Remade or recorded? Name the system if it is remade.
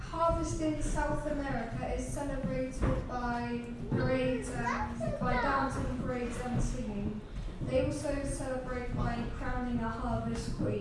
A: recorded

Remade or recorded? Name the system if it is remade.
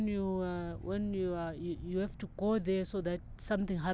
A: recorded